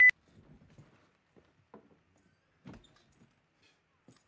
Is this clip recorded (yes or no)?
yes